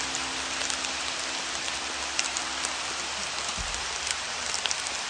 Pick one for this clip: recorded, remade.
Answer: recorded